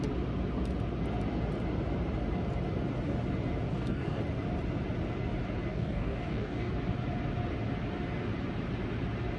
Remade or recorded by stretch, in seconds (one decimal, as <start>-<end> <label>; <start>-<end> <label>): 0.0-3.7 recorded; 3.7-4.2 remade; 4.2-5.7 recorded; 5.7-6.7 remade; 6.7-9.4 recorded